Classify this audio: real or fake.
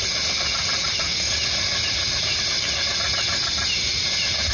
real